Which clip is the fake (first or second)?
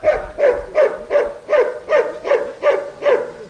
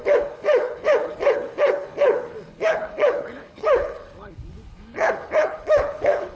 second